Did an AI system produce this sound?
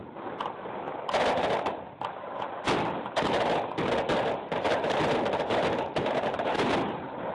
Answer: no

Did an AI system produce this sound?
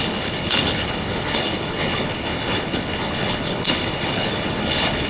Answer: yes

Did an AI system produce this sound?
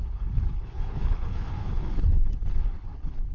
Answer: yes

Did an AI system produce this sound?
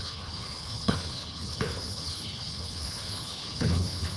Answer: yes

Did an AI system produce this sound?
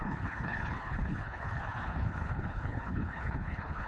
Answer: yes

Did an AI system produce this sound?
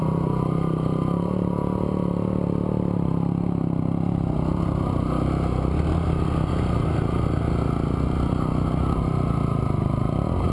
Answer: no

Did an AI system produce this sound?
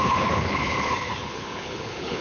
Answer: yes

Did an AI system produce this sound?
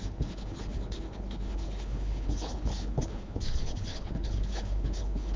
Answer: yes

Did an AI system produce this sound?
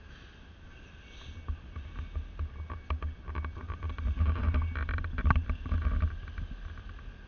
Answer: no